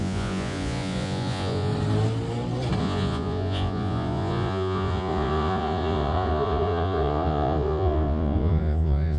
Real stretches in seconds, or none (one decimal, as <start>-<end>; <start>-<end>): 1.7-2.8